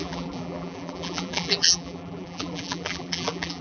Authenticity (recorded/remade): remade